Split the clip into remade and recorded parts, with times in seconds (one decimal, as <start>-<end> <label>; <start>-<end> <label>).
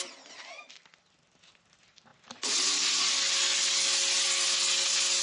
0.0-5.2 recorded